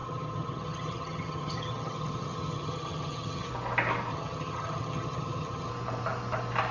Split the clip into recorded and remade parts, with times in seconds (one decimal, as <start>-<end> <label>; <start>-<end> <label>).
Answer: 0.0-3.5 remade; 3.5-4.1 recorded; 4.1-5.7 remade; 5.7-6.7 recorded